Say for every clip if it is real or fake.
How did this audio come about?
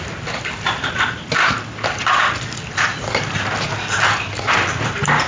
real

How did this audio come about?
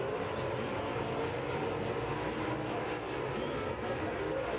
real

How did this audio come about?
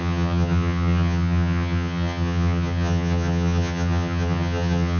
fake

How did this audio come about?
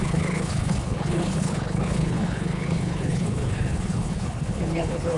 fake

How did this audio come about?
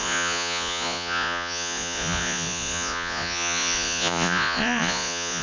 fake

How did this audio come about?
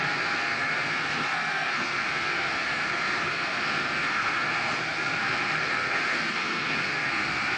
fake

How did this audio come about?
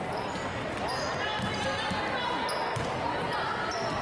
real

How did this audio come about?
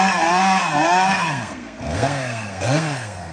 fake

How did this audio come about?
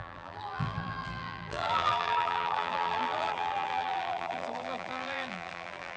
fake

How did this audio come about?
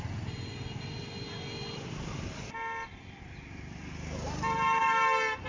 real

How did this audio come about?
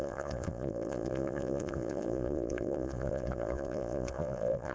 fake